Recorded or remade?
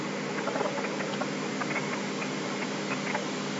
recorded